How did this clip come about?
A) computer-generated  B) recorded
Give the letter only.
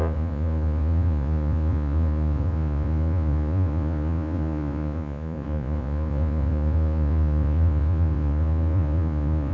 A